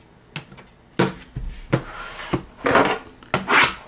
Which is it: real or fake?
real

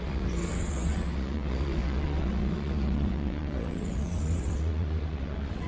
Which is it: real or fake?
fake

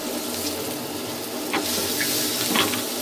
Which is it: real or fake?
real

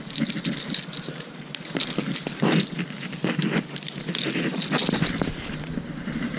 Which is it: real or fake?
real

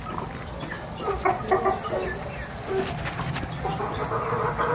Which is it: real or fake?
real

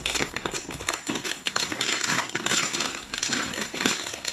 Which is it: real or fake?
fake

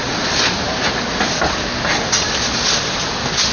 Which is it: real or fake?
real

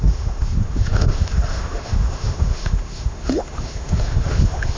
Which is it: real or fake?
fake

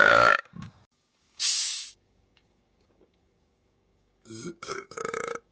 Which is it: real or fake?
fake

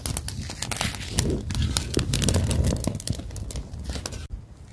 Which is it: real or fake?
real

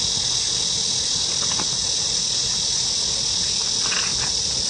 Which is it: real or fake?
real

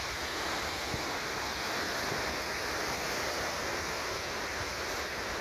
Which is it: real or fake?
real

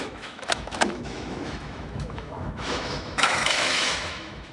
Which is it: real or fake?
fake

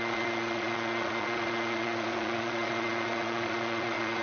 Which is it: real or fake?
fake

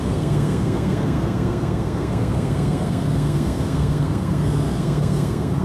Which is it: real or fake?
fake